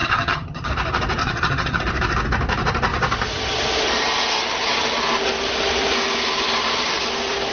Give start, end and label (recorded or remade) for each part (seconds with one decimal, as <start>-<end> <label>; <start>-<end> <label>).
0.0-0.7 remade; 0.7-1.2 recorded; 1.2-1.8 remade; 1.8-7.5 recorded

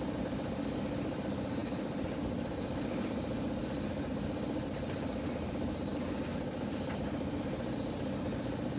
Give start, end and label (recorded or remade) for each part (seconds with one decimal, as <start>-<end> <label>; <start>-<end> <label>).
0.0-8.8 recorded